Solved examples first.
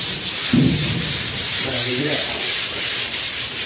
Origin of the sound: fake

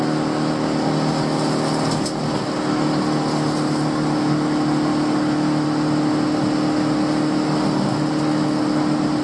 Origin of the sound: real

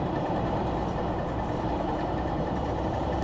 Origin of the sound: fake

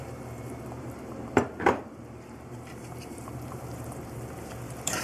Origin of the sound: fake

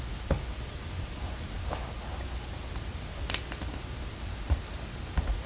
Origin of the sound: real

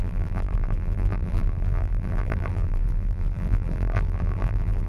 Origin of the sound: fake